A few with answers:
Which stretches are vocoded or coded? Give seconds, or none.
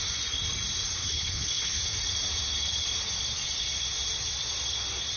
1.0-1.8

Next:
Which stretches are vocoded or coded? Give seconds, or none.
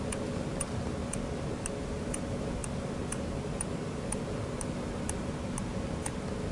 none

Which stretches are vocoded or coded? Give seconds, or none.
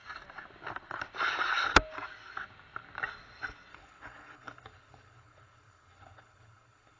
3.7-7.0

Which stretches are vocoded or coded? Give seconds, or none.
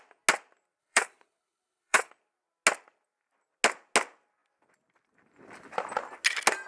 0.8-2.1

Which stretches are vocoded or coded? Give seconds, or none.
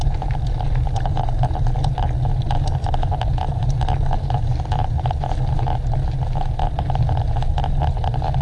none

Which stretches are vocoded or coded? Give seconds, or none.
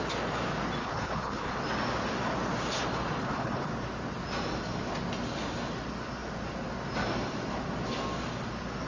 0.8-1.5; 3.2-3.7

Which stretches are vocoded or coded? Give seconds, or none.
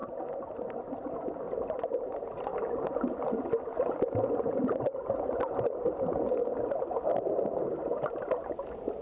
none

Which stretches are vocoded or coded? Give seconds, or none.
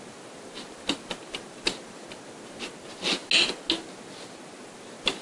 none